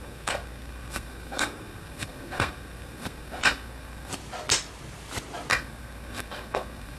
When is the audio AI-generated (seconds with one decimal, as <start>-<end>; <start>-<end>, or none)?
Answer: 0.0-4.1; 5.5-7.0